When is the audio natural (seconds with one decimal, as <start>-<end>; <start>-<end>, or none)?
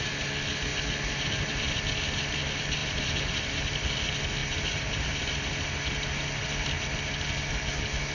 0.0-2.8; 3.6-4.4; 5.5-8.1